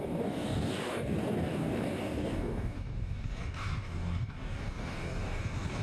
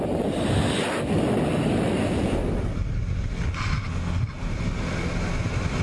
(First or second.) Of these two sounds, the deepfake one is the first